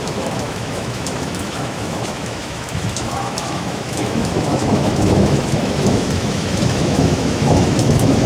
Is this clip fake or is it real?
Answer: fake